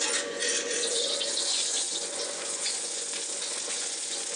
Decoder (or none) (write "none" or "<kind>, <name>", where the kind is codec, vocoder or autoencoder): vocoder, Vocos